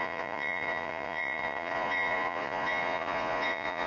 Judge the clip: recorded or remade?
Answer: remade